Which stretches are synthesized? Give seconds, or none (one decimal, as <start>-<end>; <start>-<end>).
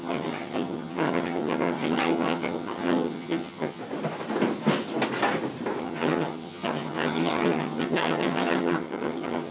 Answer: 0.0-3.8; 5.8-9.5